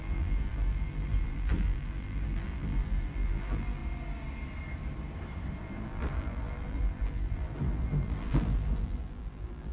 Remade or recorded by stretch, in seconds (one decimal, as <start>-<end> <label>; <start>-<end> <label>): 0.0-3.8 remade; 3.8-5.6 recorded; 5.6-9.7 remade